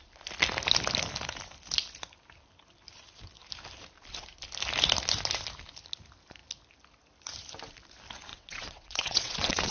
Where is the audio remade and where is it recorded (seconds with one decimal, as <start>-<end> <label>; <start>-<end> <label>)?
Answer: 0.0-8.3 recorded; 8.3-9.7 remade